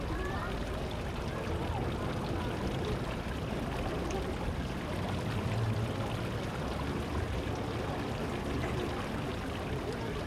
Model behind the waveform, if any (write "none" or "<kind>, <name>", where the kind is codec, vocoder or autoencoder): vocoder, BigVGAN v2